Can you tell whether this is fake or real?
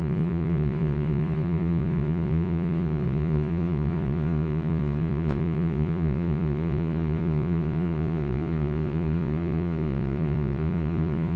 fake